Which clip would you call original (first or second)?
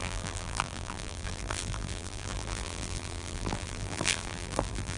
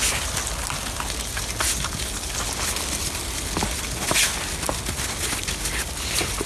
second